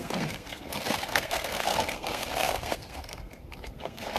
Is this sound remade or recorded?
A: remade